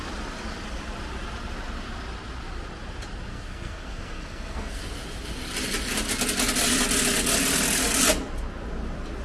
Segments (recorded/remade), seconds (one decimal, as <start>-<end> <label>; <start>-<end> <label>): 0.0-3.3 recorded; 3.3-4.8 remade; 4.8-9.2 recorded